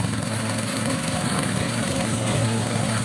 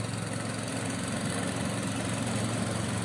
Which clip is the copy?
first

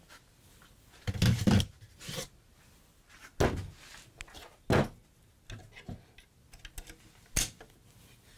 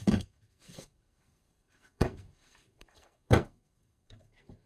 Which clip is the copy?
second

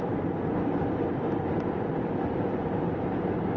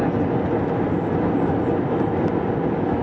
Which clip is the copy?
first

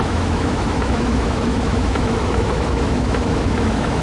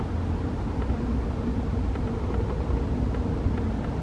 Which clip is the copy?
first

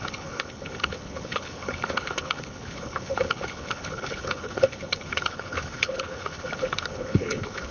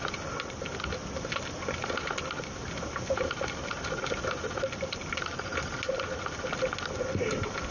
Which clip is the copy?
first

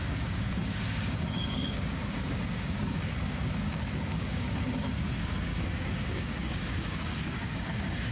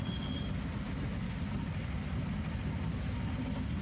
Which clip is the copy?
first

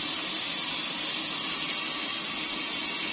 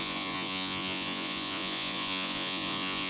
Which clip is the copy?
second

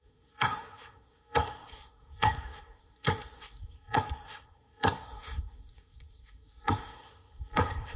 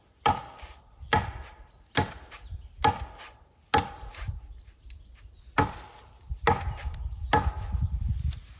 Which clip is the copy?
first